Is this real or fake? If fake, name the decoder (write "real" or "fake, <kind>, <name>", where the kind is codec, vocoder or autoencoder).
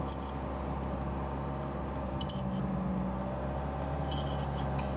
real